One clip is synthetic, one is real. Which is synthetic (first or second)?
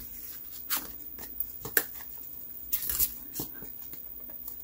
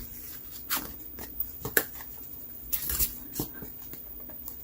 second